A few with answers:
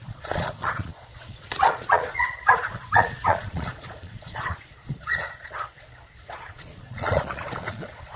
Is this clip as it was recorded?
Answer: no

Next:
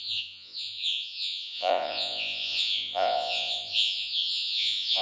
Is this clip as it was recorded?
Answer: no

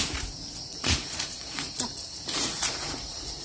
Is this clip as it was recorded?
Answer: no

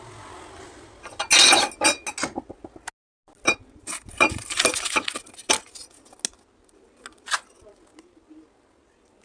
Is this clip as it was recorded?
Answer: yes